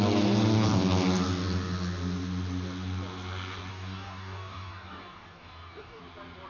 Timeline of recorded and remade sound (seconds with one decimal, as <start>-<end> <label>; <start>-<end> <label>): 0.0-3.7 recorded; 3.7-6.0 remade; 6.0-6.5 recorded